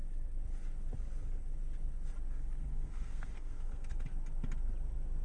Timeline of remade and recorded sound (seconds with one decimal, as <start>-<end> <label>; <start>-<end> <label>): 0.0-2.6 recorded; 2.6-3.9 remade; 3.9-5.2 recorded